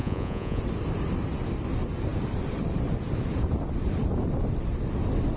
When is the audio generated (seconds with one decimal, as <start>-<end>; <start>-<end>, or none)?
0.0-0.6